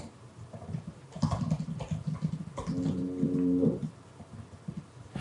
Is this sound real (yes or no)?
yes